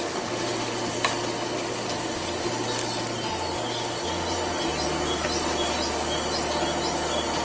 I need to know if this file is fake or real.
real